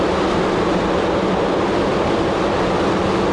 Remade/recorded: remade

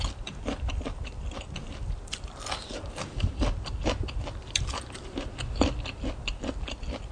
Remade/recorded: recorded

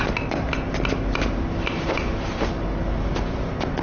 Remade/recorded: recorded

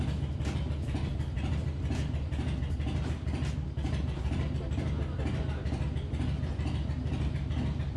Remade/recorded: recorded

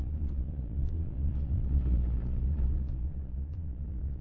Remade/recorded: remade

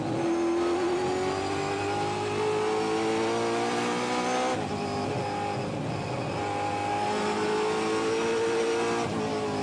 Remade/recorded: recorded